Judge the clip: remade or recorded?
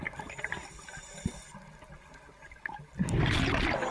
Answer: recorded